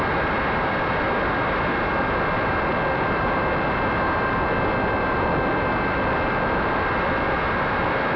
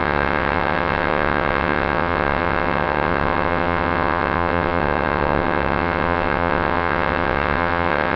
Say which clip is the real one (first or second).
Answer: first